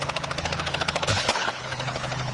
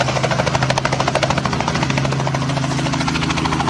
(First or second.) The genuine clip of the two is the second